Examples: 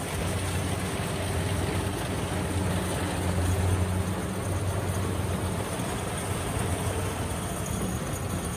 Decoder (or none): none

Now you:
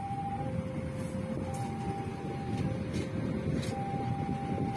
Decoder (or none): none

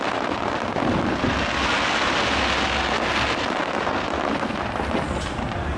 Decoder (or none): none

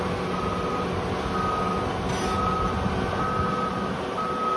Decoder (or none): none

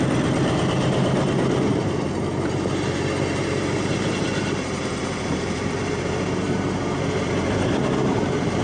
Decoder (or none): vocoder, BigVGAN v2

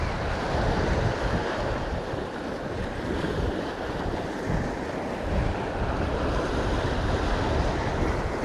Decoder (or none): none